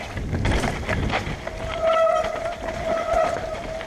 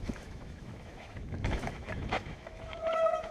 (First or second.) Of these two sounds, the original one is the first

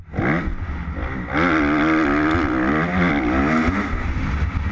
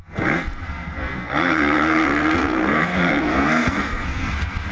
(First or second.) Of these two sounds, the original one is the first